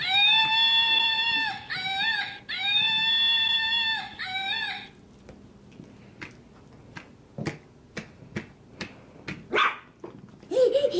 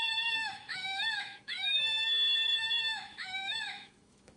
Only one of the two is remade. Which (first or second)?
second